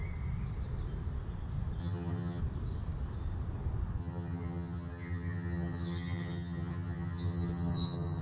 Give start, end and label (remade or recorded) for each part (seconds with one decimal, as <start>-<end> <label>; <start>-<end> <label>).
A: 0.0-1.8 recorded; 1.8-2.4 remade; 2.4-4.0 recorded; 4.0-8.2 remade